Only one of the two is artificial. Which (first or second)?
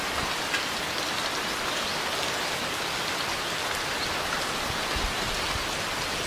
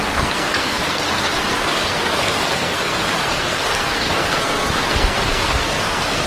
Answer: second